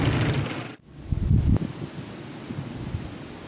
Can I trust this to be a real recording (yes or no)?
yes